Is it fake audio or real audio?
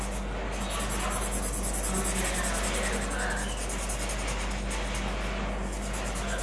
real